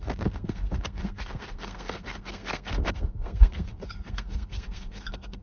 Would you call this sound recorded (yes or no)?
no